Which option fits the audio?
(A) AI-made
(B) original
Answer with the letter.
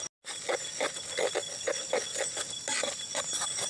B